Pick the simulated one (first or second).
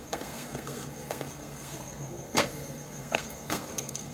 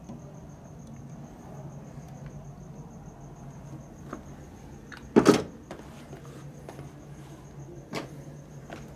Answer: first